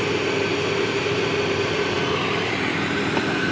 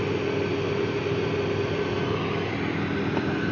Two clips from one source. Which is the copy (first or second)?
first